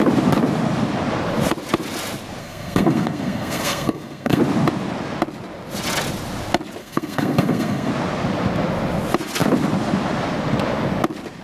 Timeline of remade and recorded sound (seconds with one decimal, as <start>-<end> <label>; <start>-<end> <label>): 0.0-2.4 recorded; 2.4-4.4 remade; 4.4-6.8 recorded; 6.8-7.9 remade; 7.9-11.4 recorded